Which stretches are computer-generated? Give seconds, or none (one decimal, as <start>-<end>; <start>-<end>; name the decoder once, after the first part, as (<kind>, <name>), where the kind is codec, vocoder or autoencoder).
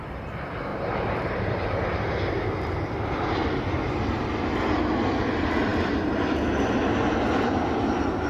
0.7-2.1 (vocoder, BigVGAN v2)